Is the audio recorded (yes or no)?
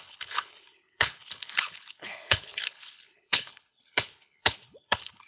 no